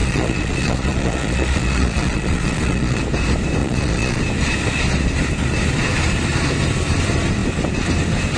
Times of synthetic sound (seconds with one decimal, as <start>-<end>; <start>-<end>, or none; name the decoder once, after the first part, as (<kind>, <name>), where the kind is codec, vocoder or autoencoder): 0.0-3.0 (vocoder, Vocos); 3.6-4.2